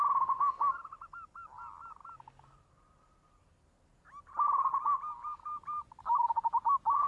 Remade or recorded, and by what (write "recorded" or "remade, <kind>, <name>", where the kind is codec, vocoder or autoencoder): recorded